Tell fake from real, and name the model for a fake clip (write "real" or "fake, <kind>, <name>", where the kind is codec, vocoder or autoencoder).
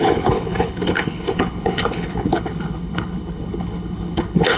fake, codec, HILCodec